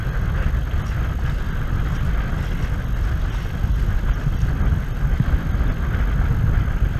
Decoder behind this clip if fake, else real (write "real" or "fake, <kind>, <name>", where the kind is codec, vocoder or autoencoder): real